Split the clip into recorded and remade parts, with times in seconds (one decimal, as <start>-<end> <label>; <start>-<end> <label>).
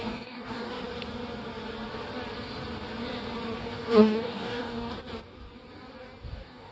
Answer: 0.0-0.8 remade; 0.8-3.6 recorded; 3.6-4.9 remade; 4.9-6.3 recorded; 6.3-6.7 remade